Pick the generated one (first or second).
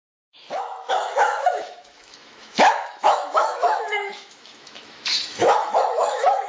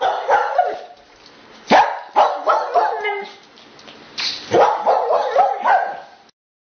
first